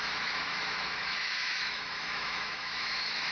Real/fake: fake